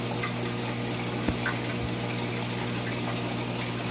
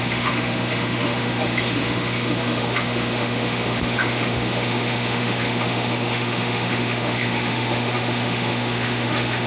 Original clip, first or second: first